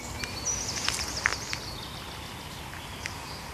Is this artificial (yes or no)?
no